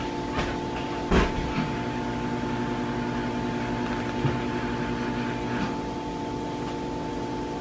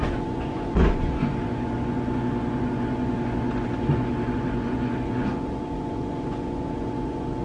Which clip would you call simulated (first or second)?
second